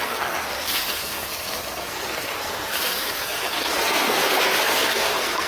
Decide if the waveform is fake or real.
fake